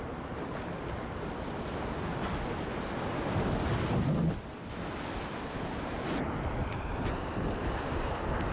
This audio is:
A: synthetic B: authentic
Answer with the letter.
B